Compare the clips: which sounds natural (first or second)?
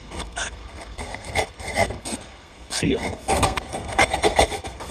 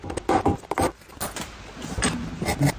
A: second